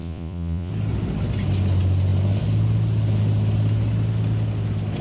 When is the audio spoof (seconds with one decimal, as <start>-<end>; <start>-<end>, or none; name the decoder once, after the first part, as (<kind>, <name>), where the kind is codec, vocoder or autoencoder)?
0.0-0.7 (vocoder, Vocos)